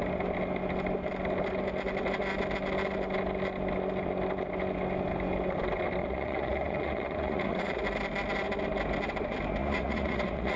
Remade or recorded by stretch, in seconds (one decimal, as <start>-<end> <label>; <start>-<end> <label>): 0.0-6.0 recorded; 6.0-7.8 remade; 7.8-9.6 recorded; 9.6-10.6 remade